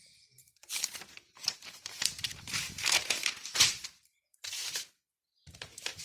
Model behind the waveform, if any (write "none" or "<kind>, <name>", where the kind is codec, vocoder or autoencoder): vocoder, BigVGAN v2